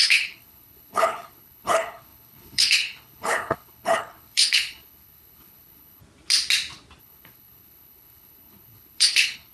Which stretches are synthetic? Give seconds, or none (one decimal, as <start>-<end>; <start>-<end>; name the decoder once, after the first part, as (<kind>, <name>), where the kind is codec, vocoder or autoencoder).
0.0-6.0 (codec, HILCodec); 7.0-9.5